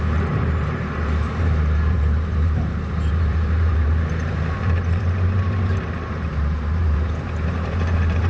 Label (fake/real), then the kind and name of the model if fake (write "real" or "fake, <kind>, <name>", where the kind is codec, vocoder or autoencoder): fake, vocoder, BigVGAN v2